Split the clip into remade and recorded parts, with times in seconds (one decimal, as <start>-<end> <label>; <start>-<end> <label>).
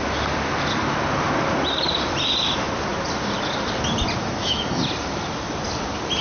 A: 0.0-4.2 recorded; 4.2-4.8 remade; 4.8-6.2 recorded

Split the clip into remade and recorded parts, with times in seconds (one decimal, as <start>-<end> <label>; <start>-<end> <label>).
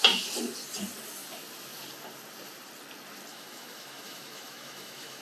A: 0.0-3.3 recorded; 3.3-5.2 remade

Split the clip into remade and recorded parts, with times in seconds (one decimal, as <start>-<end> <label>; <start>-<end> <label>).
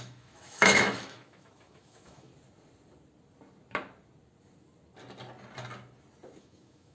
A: 0.0-2.3 remade; 2.3-6.4 recorded; 6.4-6.9 remade